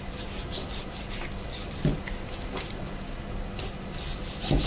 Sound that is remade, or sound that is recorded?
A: recorded